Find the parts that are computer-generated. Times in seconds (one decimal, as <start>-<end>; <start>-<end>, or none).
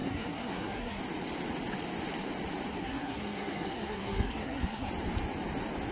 0.0-1.0; 2.7-4.9